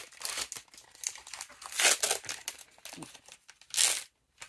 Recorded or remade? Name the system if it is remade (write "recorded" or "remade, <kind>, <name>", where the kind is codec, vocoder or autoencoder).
recorded